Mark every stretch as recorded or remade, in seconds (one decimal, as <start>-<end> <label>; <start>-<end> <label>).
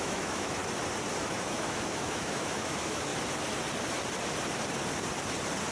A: 0.0-0.6 remade; 0.6-1.2 recorded; 1.2-3.1 remade; 3.1-5.7 recorded